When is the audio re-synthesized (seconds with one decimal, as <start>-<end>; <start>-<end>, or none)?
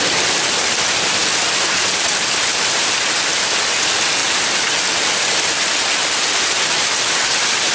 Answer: none